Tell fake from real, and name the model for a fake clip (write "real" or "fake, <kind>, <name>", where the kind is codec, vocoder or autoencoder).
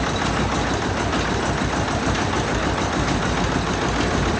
real